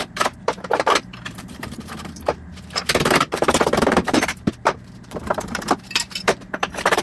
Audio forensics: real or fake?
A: fake